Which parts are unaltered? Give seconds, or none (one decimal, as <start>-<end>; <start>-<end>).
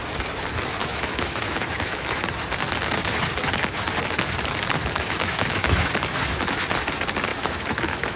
0.0-0.8; 2.2-4.8; 5.9-7.3